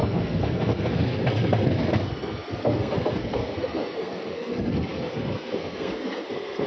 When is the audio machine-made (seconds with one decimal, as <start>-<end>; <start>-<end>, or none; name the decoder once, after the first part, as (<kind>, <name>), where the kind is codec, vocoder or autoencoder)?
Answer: 0.0-6.7 (codec, SNAC)